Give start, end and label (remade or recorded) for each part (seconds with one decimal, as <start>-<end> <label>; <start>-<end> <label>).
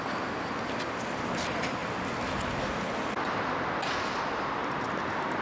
0.0-5.4 recorded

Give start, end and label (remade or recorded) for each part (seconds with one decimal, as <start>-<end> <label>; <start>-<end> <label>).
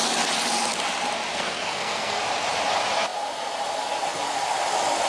0.0-1.3 recorded; 1.3-2.2 remade; 2.2-5.1 recorded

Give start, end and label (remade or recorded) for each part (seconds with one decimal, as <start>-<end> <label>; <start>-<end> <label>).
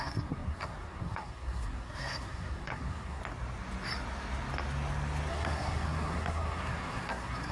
0.0-3.2 remade; 3.2-5.3 recorded; 5.3-7.5 remade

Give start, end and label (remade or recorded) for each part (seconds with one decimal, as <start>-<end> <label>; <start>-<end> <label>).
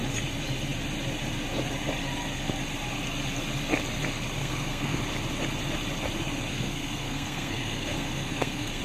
0.0-4.4 recorded; 4.4-5.0 remade; 5.0-6.5 recorded; 6.5-8.8 remade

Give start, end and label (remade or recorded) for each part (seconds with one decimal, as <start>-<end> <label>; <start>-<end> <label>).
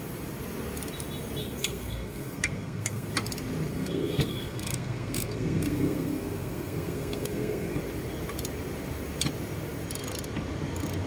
0.0-1.4 recorded; 1.4-3.1 remade; 3.1-3.7 recorded; 3.7-7.8 remade; 7.8-11.1 recorded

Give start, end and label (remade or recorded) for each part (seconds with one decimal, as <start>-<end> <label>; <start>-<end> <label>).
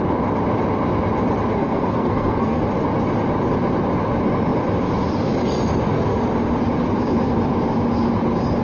0.0-1.5 recorded; 1.5-2.6 remade; 2.6-8.6 recorded